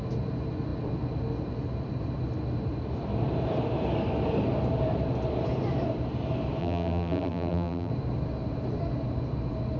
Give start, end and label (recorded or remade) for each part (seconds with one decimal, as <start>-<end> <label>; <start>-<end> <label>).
0.0-6.6 recorded; 6.6-7.9 remade; 7.9-9.8 recorded